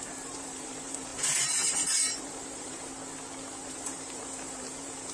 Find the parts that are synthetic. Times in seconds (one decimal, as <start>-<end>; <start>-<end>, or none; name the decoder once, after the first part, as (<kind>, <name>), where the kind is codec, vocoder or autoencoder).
0.0-2.9 (vocoder, BigVGAN v2); 3.7-5.1